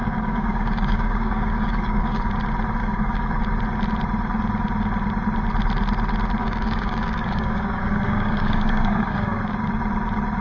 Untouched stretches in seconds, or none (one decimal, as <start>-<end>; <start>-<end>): 2.3-2.8; 3.4-6.4; 9.4-10.4